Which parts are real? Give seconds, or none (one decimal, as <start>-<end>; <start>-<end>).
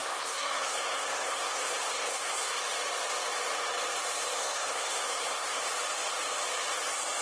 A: 2.6-4.4; 5.6-7.2